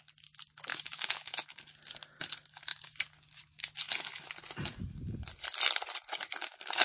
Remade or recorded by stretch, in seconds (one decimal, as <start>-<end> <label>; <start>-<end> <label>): 0.0-0.7 recorded; 0.7-1.6 remade; 1.6-6.8 recorded